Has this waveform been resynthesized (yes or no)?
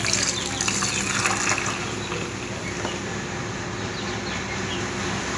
no